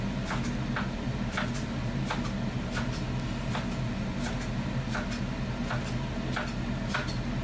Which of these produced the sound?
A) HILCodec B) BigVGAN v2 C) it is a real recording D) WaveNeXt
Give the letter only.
C